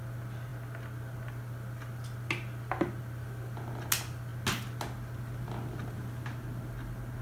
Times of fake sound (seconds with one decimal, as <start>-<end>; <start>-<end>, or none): none